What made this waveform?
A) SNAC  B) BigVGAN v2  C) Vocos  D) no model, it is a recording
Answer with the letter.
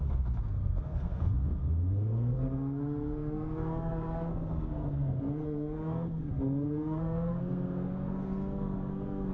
A